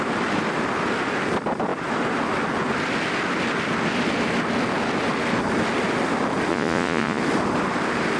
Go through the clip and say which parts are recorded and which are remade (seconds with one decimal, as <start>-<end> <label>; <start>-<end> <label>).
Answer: 0.0-6.5 recorded; 6.5-7.2 remade; 7.2-8.2 recorded